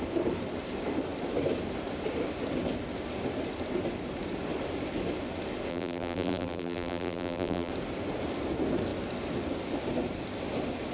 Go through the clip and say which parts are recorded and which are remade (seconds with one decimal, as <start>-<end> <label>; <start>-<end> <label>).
0.0-5.7 recorded; 5.7-7.7 remade; 7.7-10.9 recorded